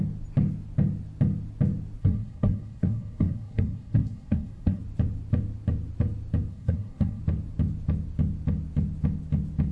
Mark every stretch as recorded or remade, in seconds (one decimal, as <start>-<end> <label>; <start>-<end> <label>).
0.0-2.0 recorded; 2.0-4.8 remade; 4.8-6.5 recorded; 6.5-7.2 remade; 7.2-9.7 recorded